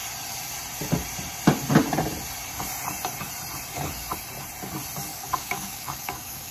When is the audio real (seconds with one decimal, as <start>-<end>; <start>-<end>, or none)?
0.0-5.1